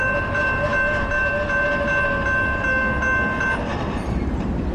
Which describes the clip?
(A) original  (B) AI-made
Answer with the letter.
A